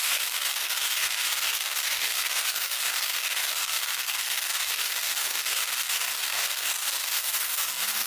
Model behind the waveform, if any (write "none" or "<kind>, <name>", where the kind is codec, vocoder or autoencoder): codec, DAC